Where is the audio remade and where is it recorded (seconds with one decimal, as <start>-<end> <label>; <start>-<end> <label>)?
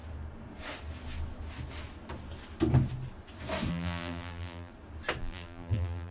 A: 0.0-3.7 recorded; 3.7-4.7 remade; 4.7-5.2 recorded; 5.2-6.1 remade